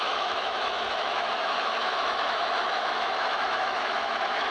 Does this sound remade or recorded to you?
remade